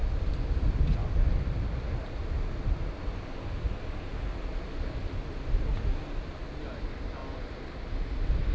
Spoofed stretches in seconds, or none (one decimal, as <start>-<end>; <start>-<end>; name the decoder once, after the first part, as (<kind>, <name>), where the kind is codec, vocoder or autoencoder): none